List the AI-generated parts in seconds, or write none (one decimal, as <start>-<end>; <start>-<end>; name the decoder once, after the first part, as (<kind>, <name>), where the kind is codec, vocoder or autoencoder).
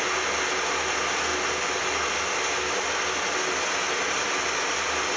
none